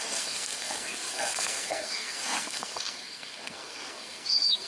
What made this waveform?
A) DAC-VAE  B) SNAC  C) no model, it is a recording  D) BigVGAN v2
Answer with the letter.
B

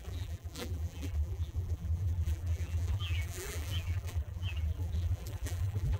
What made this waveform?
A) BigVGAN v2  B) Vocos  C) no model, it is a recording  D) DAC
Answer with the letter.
A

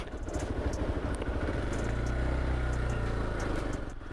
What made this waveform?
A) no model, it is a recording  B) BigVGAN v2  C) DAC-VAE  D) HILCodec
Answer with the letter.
A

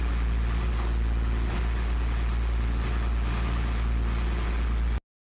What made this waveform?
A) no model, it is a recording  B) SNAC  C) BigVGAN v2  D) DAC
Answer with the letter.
A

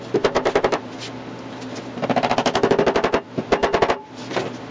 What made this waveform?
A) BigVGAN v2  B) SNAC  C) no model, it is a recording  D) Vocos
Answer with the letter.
C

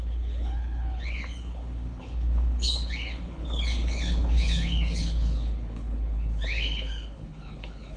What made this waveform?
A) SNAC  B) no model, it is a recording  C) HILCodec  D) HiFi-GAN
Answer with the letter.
C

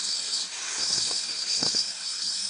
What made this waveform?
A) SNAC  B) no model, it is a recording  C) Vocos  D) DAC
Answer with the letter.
A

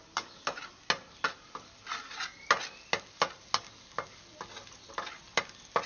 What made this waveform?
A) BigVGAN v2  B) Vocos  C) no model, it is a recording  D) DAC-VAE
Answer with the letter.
C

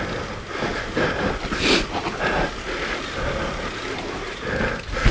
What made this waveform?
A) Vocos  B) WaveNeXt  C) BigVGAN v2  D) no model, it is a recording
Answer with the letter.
D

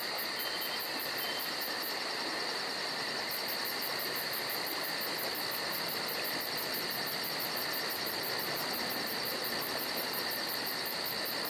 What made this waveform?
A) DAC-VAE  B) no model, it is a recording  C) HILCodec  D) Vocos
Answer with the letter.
B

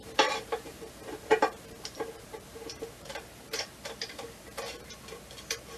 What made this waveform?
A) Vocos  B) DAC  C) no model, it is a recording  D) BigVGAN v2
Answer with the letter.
D